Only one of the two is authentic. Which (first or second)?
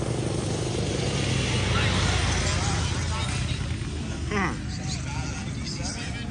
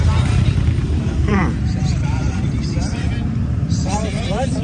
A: first